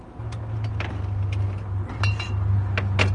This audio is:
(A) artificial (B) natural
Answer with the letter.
B